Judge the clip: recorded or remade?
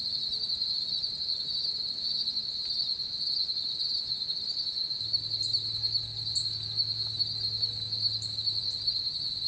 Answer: recorded